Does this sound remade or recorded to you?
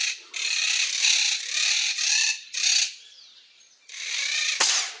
recorded